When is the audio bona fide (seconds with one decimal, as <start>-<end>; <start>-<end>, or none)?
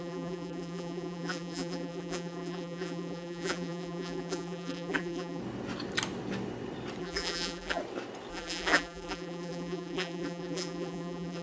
5.4-7.0; 7.8-8.3